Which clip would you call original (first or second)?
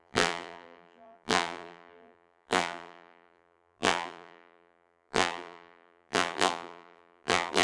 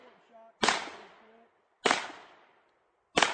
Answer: second